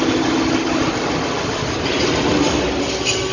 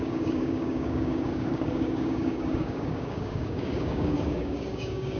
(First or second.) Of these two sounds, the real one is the first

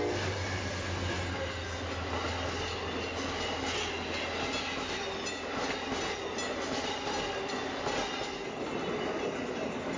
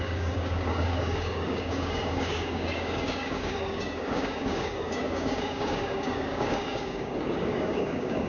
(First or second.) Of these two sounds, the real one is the first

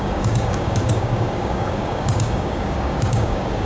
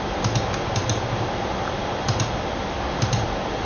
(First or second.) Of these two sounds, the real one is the second